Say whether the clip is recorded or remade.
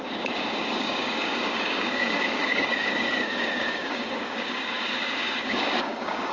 remade